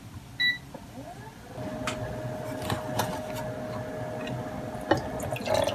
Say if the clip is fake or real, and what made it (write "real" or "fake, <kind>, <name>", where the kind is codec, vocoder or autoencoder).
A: real